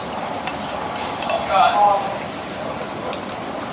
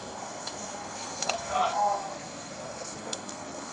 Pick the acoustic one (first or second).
first